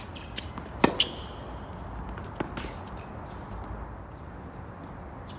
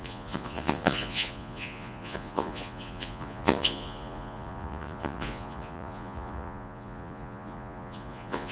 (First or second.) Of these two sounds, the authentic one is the first